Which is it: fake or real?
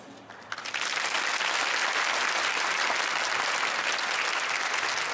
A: real